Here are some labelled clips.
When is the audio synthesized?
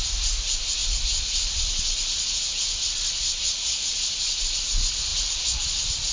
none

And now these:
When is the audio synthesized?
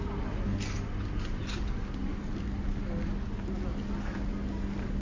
none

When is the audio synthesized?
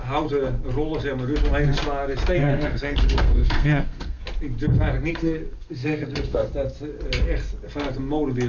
2.4-4.2 (codec, SNAC); 5.1-6.5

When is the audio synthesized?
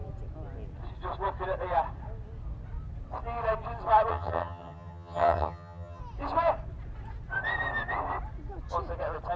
4.1-6.0 (vocoder, HiFi-GAN)